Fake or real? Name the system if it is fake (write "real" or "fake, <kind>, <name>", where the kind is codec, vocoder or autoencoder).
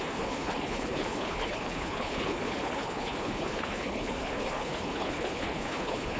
fake, codec, HILCodec